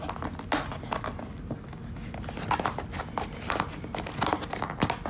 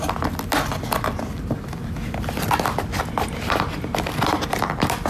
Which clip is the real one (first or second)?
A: first